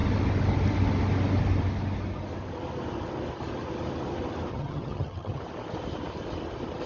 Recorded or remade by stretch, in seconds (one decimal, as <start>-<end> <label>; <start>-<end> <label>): 0.0-4.5 recorded; 4.5-5.4 remade; 5.4-6.9 recorded